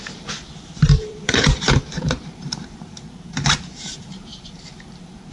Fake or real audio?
fake